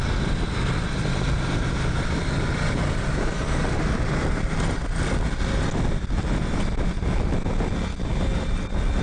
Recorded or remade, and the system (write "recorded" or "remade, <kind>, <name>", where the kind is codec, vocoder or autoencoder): recorded